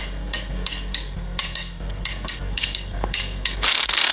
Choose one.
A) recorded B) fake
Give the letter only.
B